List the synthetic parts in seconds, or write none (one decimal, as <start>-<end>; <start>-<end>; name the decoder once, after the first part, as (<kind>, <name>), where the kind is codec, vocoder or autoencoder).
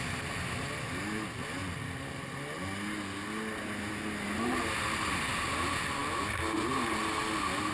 none